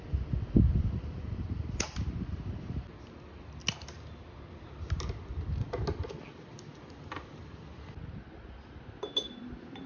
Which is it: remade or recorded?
recorded